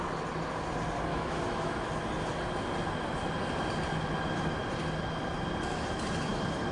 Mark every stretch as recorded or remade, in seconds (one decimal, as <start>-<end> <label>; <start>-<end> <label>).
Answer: 0.0-1.1 recorded; 1.1-1.9 remade; 1.9-6.7 recorded